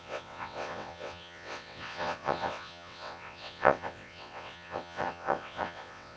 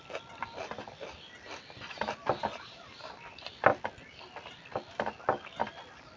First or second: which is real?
second